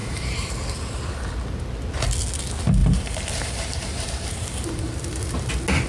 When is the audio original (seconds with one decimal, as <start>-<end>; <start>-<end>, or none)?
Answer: 0.5-2.8; 5.5-5.9